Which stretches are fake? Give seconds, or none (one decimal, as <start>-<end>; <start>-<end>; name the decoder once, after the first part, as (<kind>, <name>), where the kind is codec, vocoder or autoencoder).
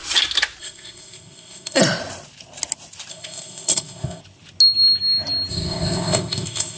0.6-1.8 (codec, ZipCodec); 3.1-4.2; 5.5-6.8